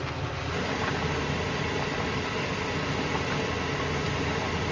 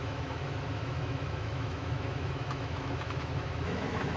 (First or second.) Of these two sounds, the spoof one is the second